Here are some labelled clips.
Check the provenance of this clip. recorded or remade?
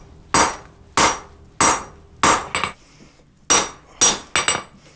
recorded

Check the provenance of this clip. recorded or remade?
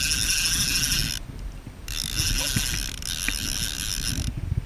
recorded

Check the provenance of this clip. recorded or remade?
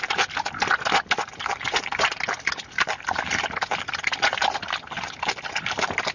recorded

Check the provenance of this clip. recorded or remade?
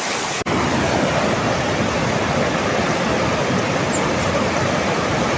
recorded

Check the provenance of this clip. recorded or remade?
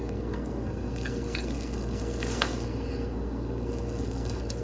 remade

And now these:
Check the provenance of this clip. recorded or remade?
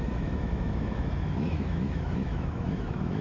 remade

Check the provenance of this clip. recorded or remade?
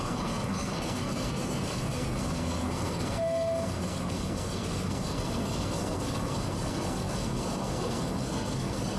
remade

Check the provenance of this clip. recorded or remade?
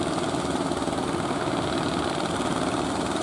recorded